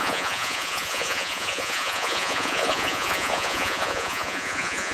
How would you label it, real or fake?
fake